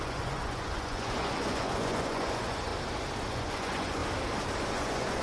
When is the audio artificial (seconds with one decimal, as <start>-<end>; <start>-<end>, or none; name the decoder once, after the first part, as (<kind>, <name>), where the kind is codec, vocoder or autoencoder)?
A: 0.0-2.7 (vocoder, Vocos); 3.3-4.0; 4.7-5.2